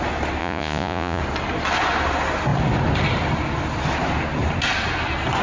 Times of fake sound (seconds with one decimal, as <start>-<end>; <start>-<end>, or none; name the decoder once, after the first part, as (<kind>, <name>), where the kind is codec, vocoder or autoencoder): 0.4-1.2 (vocoder, Vocos)